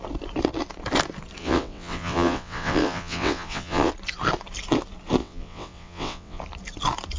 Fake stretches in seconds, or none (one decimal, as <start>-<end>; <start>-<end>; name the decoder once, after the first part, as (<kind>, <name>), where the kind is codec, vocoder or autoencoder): 1.4-3.9 (vocoder, WaveNeXt); 5.2-6.4